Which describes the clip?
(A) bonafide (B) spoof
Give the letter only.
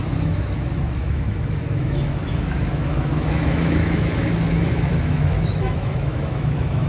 B